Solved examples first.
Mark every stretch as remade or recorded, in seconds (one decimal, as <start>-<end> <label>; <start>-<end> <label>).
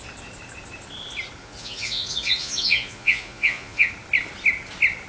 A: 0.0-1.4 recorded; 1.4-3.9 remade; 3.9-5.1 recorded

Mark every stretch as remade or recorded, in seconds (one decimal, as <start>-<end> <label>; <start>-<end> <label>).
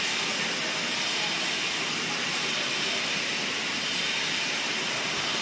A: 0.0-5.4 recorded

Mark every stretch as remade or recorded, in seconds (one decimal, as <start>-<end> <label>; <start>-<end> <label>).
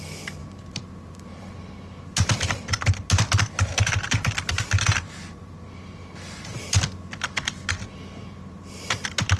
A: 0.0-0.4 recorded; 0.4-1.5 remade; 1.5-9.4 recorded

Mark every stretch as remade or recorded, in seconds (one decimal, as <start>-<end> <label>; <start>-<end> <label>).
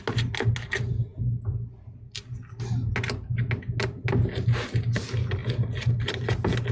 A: 0.0-6.7 recorded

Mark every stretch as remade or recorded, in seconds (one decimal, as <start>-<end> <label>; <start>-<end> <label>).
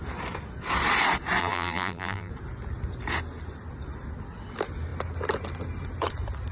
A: 0.0-1.4 recorded; 1.4-2.3 remade; 2.3-6.5 recorded